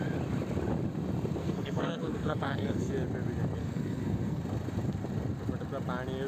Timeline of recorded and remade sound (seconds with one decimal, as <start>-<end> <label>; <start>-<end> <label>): 0.0-1.4 recorded; 1.4-2.9 remade; 2.9-3.6 recorded; 3.6-4.4 remade; 4.4-6.3 recorded